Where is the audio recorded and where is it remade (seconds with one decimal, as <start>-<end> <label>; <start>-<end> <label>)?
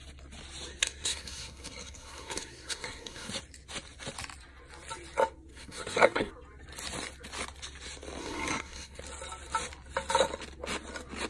0.0-0.8 recorded; 0.8-3.3 remade; 3.3-5.5 recorded; 5.5-6.3 remade; 6.3-8.2 recorded; 8.2-9.0 remade; 9.0-11.3 recorded